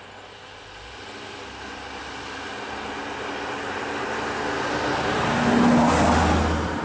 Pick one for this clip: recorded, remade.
recorded